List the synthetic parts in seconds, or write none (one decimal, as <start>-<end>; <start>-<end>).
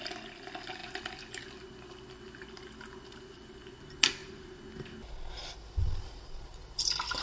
none